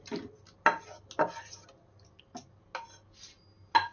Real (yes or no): yes